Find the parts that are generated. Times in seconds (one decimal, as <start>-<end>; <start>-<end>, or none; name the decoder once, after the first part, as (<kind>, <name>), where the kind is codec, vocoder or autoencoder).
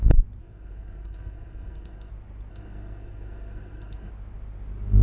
0.4-2.1 (codec, SNAC); 2.5-4.1